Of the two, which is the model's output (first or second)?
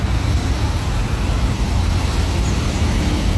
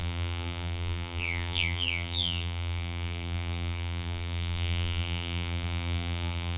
second